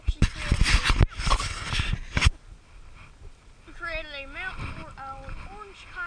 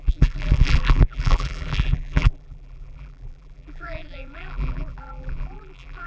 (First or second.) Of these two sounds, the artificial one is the second